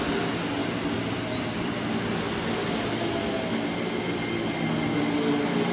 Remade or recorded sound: recorded